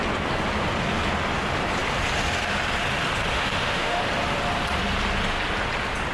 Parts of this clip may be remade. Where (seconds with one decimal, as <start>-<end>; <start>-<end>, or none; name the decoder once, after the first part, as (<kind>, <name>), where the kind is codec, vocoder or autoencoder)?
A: 3.3-4.0 (autoencoder, DAC-VAE)